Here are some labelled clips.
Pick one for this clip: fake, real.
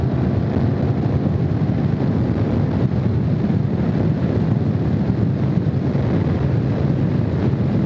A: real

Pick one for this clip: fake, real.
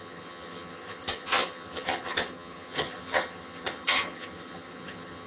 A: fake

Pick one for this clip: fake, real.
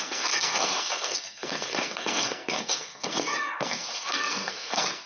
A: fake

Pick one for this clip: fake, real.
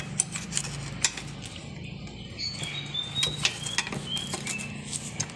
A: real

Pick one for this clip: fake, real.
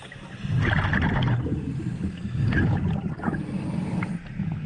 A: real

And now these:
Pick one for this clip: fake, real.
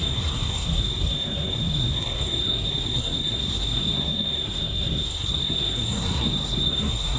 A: fake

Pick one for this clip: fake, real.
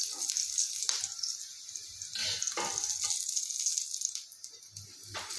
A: real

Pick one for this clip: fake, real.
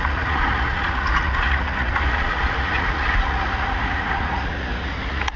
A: fake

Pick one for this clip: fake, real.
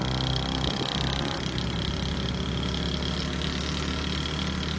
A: real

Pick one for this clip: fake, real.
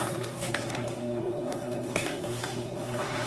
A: fake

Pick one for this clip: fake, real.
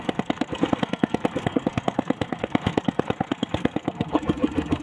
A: fake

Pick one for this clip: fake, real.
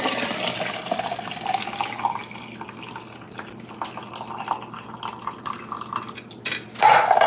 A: real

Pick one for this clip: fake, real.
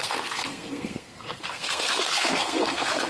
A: fake